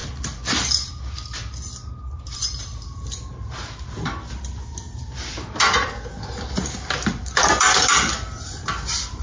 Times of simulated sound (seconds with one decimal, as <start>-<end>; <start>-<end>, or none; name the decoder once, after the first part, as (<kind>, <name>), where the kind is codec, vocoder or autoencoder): none